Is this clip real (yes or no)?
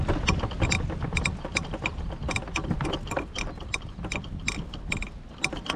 yes